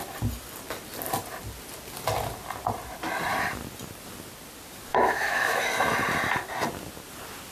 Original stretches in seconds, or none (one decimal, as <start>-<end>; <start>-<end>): 0.0-4.9; 5.6-7.5